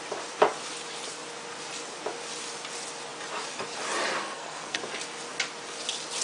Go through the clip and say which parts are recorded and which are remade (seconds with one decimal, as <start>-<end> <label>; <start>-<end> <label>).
0.0-4.2 recorded; 4.2-4.8 remade; 4.8-6.2 recorded